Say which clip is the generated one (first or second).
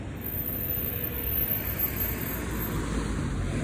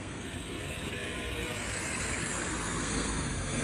second